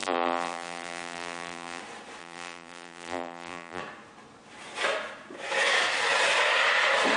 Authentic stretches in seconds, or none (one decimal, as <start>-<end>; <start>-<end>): 1.8-2.2; 3.8-7.2